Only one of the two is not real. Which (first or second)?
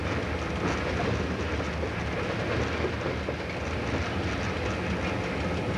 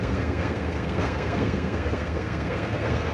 second